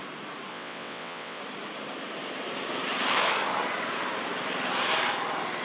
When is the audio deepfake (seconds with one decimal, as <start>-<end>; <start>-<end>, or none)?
0.5-1.4